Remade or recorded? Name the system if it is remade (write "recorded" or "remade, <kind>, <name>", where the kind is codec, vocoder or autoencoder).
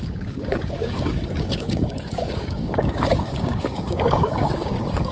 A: remade, codec, DAC